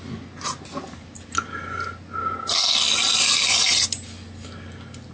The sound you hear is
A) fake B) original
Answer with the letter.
B